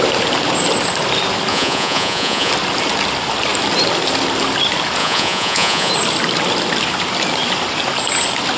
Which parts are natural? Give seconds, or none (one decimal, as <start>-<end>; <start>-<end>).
0.0-1.5; 2.5-5.0; 5.9-8.6